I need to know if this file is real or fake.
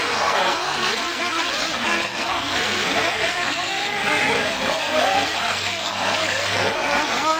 fake